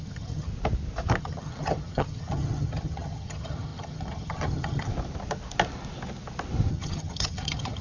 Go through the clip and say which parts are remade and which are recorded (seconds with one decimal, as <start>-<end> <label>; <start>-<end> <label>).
0.0-0.5 remade; 0.5-1.2 recorded; 1.2-4.9 remade; 4.9-6.7 recorded; 6.7-7.8 remade